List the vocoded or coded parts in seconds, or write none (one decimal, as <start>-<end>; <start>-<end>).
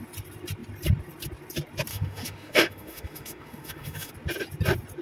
1.9-4.1